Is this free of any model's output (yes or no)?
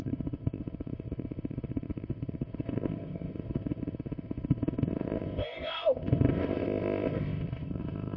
no